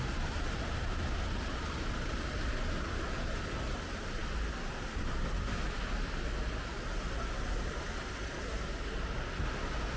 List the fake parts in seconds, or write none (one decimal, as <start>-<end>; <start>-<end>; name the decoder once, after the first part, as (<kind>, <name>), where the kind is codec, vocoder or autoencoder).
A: none